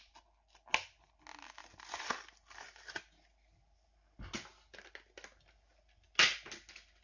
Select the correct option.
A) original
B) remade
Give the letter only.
A